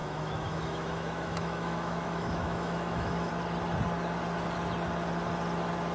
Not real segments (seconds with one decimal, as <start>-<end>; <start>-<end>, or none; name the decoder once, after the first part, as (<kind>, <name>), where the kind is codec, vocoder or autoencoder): 0.0-3.3 (autoencoder, DAC-VAE)